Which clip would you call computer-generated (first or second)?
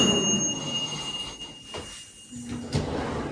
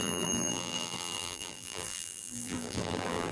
second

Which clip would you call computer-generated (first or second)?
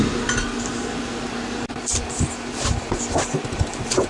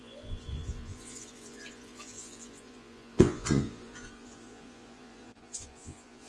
second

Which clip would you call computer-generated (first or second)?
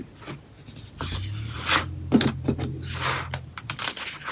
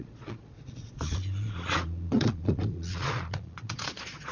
second